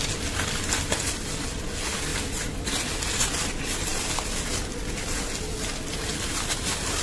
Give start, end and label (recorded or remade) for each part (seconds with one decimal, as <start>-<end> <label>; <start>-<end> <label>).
0.0-7.0 recorded